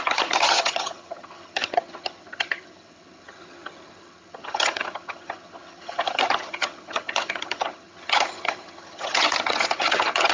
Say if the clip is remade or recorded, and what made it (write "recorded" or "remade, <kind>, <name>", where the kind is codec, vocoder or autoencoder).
remade, vocoder, HiFi-GAN